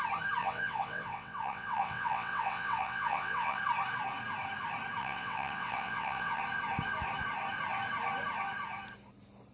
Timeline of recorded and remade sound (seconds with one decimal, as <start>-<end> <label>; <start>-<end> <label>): 0.0-0.4 recorded; 0.4-3.6 remade; 3.6-5.0 recorded; 5.0-6.4 remade; 6.4-9.5 recorded